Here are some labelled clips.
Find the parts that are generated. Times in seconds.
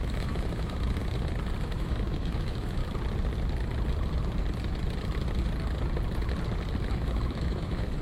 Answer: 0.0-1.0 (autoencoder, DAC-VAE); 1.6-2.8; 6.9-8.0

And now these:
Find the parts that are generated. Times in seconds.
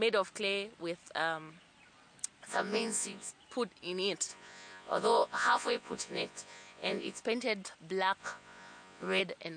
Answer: 2.5-3.3 (vocoder, Vocos); 4.3-7.2; 8.2-9.2